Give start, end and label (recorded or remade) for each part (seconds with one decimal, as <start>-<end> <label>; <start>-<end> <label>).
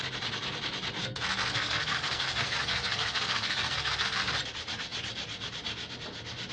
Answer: 0.0-1.0 recorded; 1.0-4.3 remade; 4.3-6.5 recorded